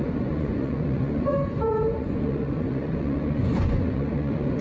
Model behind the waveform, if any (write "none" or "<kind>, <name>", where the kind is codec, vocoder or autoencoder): vocoder, Vocos